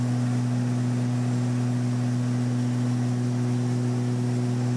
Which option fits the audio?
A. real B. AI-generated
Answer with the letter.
A